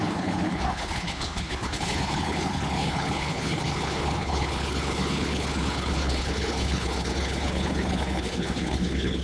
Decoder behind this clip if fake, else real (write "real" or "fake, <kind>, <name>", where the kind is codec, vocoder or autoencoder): fake, codec, HILCodec